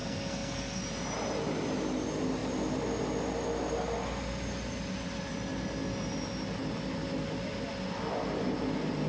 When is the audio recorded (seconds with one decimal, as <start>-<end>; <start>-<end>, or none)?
0.8-9.1